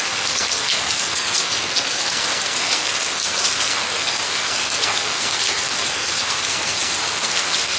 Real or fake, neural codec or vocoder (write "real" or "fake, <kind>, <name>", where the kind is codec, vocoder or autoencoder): fake, codec, SNAC